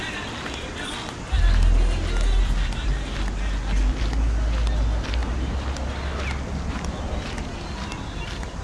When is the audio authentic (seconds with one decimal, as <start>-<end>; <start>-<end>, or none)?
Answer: 0.0-8.6